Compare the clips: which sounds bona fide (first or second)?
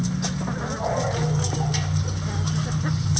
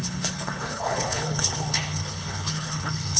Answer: first